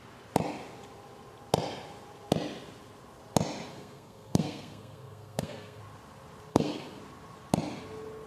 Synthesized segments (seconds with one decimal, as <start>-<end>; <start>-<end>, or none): 3.7-5.8; 6.5-7.0